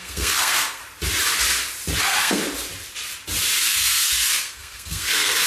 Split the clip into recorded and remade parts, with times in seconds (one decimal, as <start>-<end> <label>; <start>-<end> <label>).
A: 0.0-0.8 remade; 0.8-2.0 recorded; 2.0-2.4 remade; 2.4-3.7 recorded; 3.7-5.5 remade